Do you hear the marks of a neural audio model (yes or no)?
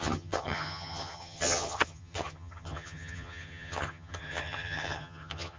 yes